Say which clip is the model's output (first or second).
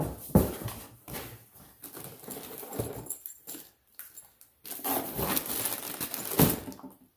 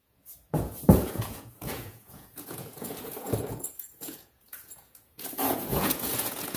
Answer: second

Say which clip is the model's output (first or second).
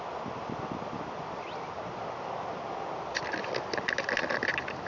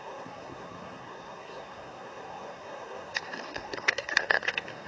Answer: second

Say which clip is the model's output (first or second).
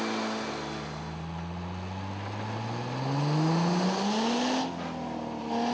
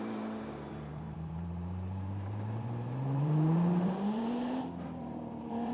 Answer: second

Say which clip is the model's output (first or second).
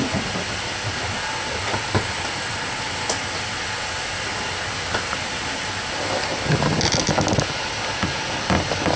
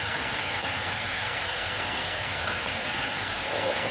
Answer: second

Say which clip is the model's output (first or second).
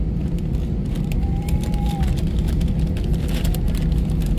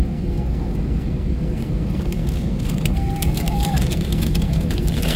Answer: second